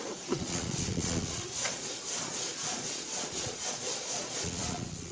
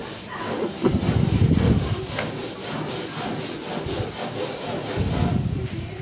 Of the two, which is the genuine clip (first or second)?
second